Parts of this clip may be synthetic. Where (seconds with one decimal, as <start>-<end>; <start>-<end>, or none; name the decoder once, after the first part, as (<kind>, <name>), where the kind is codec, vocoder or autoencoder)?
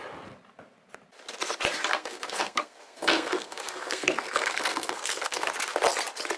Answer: 1.9-5.5 (codec, SNAC)